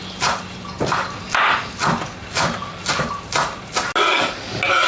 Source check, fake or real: real